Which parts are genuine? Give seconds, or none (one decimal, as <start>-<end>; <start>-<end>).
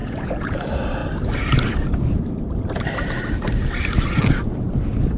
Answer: 0.6-5.2